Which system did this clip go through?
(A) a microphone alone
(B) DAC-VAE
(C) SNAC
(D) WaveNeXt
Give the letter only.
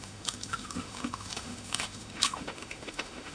B